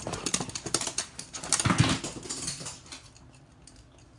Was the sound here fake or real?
real